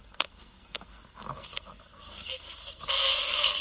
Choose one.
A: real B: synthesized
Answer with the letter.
B